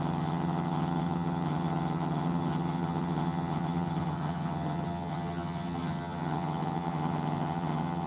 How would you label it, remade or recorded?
remade